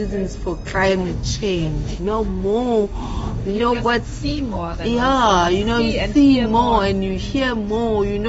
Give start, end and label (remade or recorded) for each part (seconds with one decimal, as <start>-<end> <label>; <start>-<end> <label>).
0.0-0.9 recorded; 0.9-4.8 remade; 4.8-8.3 recorded